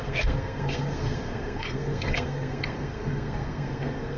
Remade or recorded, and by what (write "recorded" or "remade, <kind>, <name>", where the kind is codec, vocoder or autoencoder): remade, codec, SNAC